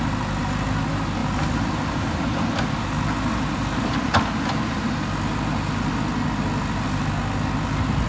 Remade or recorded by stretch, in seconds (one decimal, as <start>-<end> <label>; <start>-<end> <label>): 0.0-8.1 recorded